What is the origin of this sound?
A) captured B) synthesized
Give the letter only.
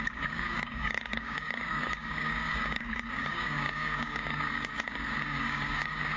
B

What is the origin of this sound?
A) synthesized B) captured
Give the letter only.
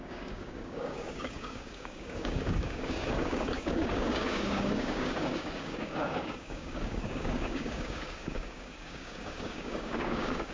A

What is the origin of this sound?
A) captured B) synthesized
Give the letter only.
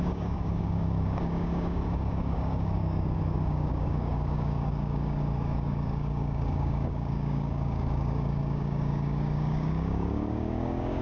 B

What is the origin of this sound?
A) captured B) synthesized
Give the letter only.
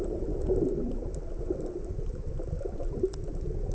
A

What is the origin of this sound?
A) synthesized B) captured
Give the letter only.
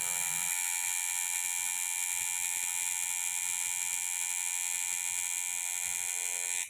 B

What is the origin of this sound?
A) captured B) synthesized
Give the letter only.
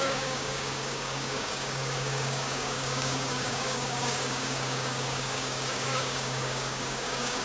B